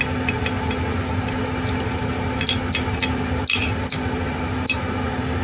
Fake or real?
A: real